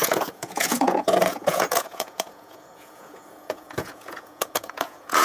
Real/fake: fake